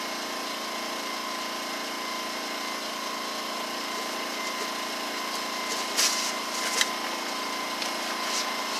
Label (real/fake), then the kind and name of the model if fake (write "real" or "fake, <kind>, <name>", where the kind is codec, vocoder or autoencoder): real